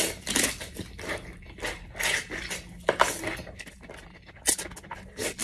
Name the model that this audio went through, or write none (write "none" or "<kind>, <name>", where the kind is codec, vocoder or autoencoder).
none